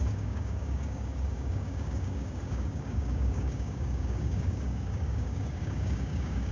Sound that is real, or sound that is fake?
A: fake